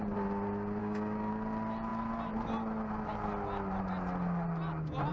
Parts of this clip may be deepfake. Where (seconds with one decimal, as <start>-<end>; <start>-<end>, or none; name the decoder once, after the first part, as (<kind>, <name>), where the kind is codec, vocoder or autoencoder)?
0.8-1.3 (codec, DAC)